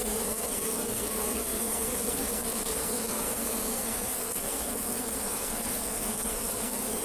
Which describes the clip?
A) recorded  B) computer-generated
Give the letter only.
B